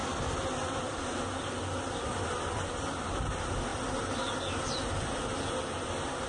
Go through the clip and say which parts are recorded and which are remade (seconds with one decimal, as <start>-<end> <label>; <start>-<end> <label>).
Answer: 0.0-6.3 recorded